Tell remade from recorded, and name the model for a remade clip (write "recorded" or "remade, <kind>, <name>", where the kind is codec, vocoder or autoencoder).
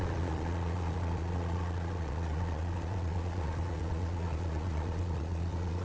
remade, vocoder, Vocos